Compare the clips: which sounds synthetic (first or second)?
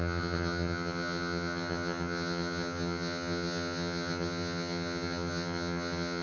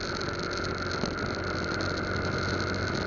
first